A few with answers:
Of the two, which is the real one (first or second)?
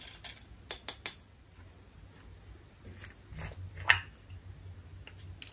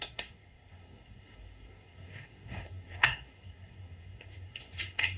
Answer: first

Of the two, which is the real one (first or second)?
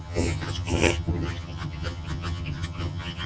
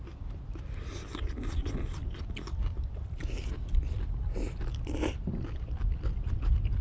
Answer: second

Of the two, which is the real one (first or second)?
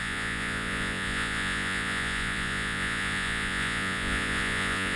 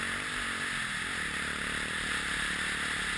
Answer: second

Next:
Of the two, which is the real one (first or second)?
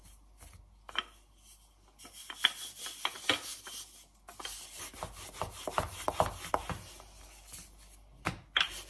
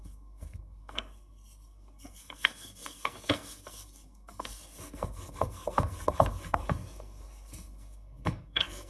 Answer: first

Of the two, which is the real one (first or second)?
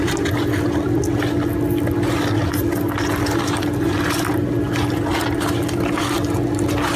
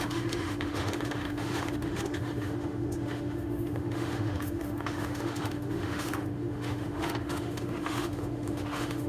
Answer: first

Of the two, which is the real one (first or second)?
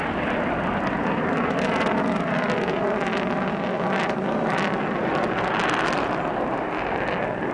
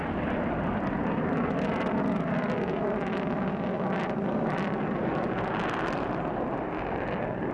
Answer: first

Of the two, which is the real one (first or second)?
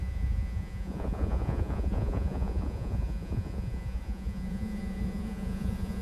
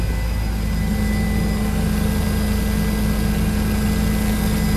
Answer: second